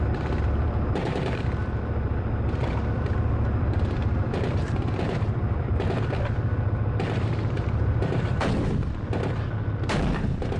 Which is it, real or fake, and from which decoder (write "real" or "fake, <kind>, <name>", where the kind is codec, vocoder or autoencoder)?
fake, vocoder, BigVGAN v2